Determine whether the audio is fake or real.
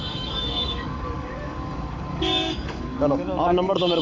fake